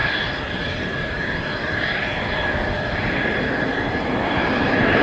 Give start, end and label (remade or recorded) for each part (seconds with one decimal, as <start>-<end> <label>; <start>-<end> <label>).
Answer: 0.0-5.0 recorded